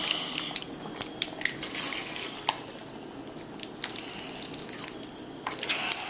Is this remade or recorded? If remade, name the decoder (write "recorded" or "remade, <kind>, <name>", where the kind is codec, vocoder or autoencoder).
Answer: recorded